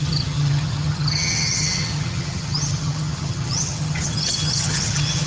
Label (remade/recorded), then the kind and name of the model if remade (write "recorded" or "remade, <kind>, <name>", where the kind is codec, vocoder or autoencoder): remade, vocoder, HiFi-GAN